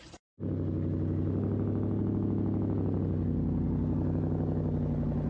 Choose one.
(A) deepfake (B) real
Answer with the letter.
B